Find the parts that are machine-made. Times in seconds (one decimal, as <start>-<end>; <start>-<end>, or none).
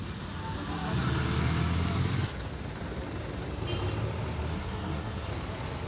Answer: 4.5-5.3